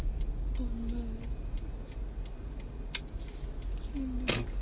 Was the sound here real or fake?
real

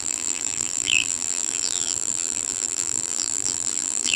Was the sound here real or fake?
fake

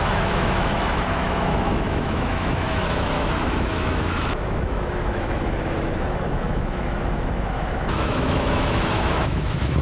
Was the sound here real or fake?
fake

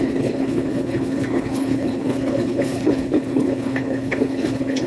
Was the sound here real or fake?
fake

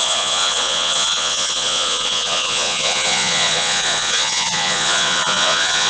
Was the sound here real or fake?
fake